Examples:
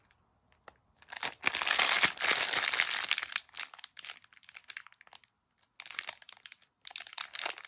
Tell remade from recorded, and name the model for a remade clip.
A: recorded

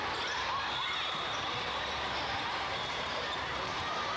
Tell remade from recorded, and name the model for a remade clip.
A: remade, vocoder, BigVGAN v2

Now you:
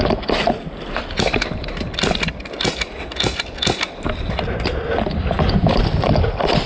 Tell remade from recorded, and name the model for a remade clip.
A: recorded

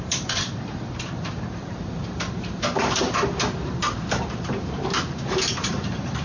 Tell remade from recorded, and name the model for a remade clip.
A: remade, vocoder, BigVGAN v2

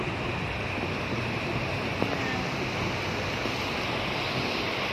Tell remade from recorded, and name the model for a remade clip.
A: recorded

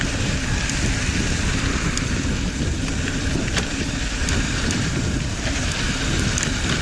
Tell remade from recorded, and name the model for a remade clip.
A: remade, vocoder, BigVGAN v2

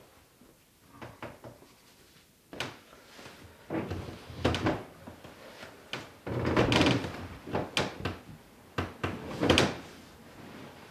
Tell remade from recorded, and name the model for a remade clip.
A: recorded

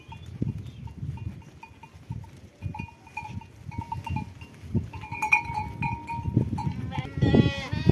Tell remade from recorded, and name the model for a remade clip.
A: recorded